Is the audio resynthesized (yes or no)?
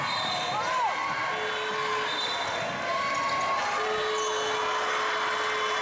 no